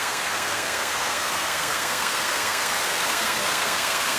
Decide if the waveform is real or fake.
fake